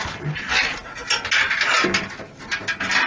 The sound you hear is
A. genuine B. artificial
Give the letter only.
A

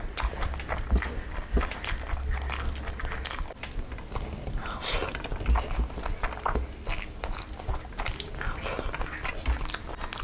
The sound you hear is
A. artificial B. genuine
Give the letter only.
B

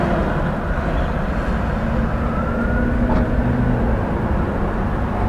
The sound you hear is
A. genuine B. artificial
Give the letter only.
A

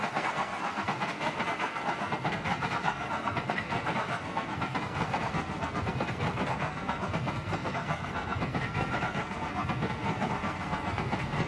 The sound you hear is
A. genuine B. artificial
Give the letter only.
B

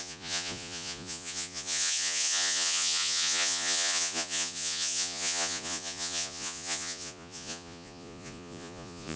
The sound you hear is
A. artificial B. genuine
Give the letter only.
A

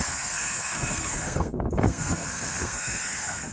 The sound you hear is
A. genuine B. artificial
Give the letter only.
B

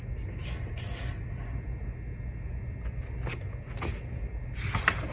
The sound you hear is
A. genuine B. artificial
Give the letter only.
A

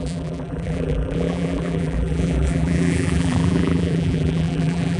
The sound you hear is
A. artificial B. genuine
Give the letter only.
A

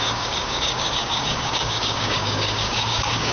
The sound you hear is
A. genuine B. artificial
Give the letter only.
B